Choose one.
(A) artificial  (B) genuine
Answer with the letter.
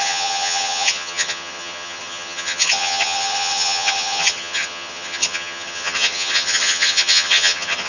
A